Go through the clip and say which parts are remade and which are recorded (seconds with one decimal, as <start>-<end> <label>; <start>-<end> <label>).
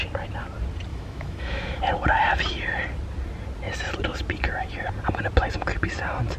0.0-0.9 recorded; 0.9-1.8 remade; 1.8-6.4 recorded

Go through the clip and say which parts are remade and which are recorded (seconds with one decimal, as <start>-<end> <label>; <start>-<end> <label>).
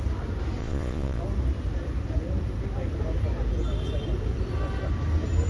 0.0-0.6 recorded; 0.6-1.2 remade; 1.2-5.5 recorded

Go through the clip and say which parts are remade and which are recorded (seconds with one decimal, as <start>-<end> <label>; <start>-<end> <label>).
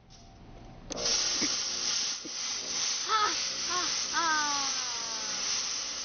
0.0-6.0 recorded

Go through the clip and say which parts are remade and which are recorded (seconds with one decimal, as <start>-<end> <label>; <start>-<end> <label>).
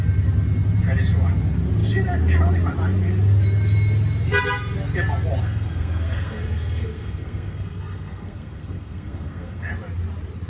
0.0-5.4 recorded; 5.4-9.7 remade; 9.7-10.5 recorded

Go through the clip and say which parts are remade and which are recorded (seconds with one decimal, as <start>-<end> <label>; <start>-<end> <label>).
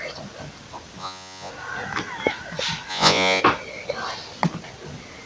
0.0-1.0 recorded; 1.0-1.5 remade; 1.5-2.9 recorded; 2.9-3.4 remade; 3.4-5.3 recorded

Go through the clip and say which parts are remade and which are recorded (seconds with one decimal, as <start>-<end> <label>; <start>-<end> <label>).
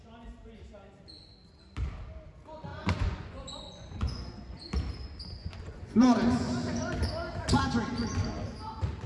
0.0-2.7 recorded; 2.7-4.7 remade; 4.7-5.4 recorded; 5.4-6.9 remade; 6.9-9.1 recorded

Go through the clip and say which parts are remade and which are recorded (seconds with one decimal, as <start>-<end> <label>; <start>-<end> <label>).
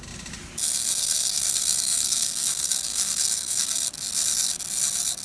0.0-0.8 recorded; 0.8-3.9 remade; 3.9-5.2 recorded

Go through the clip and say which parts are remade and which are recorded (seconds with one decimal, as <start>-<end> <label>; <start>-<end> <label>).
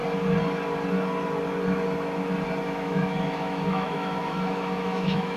0.0-2.6 recorded; 2.6-5.4 remade